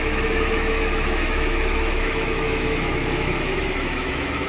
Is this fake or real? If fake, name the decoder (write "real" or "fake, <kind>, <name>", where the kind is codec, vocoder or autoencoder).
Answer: fake, autoencoder, DAC-VAE